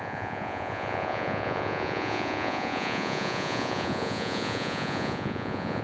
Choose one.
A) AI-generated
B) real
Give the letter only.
A